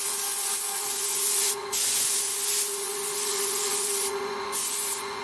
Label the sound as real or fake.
fake